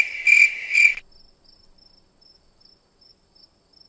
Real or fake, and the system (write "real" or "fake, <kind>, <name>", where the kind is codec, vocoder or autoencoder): real